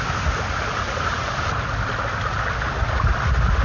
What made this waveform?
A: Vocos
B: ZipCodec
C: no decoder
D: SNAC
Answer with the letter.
C